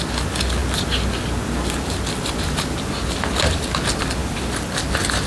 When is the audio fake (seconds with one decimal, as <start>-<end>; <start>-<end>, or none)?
none